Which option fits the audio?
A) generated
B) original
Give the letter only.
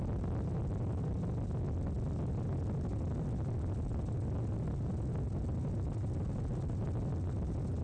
B